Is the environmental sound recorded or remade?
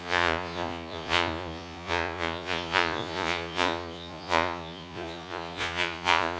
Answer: remade